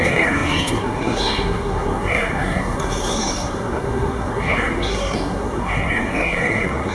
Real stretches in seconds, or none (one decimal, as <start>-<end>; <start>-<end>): none